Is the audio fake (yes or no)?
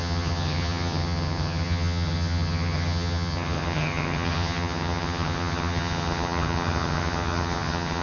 yes